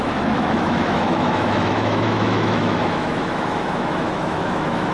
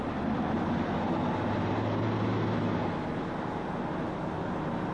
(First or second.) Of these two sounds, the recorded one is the second